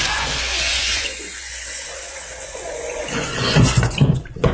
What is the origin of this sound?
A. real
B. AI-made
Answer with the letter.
B